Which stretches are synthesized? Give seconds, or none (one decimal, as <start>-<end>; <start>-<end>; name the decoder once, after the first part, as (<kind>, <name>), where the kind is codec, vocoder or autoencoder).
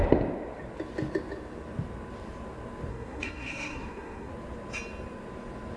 2.9-4.3 (codec, SNAC)